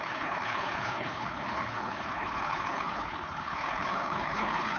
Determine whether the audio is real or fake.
fake